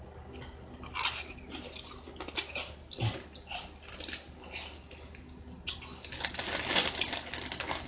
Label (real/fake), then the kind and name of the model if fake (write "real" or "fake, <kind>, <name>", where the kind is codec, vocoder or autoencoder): real